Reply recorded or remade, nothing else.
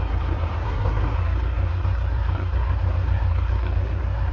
remade